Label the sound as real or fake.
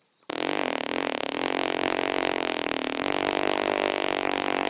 fake